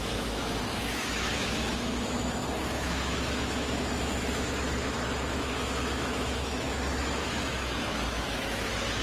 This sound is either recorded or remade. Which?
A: remade